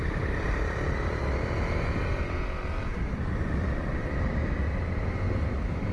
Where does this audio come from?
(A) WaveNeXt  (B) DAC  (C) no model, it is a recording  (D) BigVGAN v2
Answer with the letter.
C